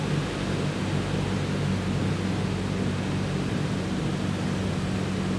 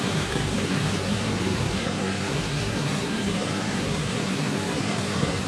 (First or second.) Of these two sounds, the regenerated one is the second